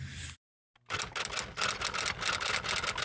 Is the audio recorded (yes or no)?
yes